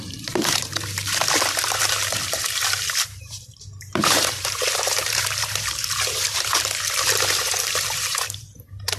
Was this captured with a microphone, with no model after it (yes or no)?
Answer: no